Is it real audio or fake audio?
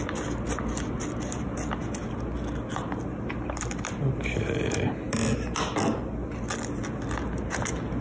real